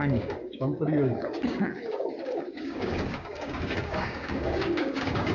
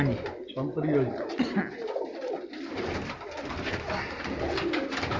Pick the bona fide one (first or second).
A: second